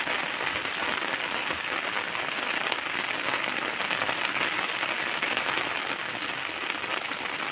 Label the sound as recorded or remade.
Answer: recorded